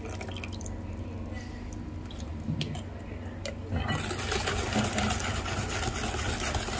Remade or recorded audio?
recorded